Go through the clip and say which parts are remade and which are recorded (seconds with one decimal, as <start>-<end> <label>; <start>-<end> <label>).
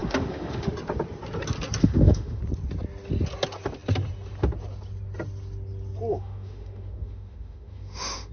0.0-0.7 remade; 0.7-1.8 recorded; 1.8-2.4 remade; 2.4-6.1 recorded; 6.1-8.3 remade